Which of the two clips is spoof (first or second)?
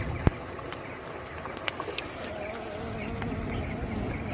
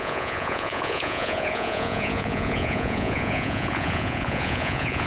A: second